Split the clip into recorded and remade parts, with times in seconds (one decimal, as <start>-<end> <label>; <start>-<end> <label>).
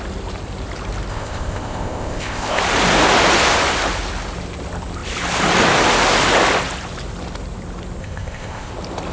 0.0-1.1 recorded; 1.1-2.6 remade; 2.6-8.0 recorded; 8.0-8.7 remade; 8.7-9.1 recorded